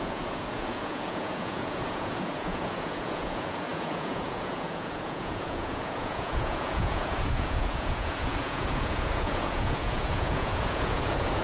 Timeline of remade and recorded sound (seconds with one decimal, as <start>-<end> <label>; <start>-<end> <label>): 0.0-11.4 remade